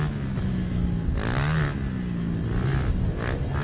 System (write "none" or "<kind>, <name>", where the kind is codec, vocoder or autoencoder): none